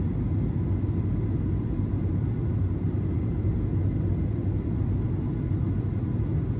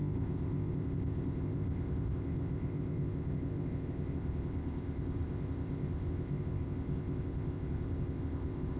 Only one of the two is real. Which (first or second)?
first